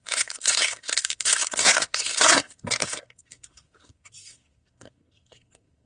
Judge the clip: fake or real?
fake